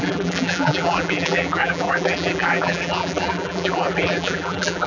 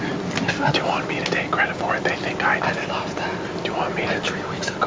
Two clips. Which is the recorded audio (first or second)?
second